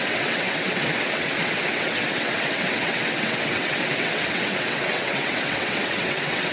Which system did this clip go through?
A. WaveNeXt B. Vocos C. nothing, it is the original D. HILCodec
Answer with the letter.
A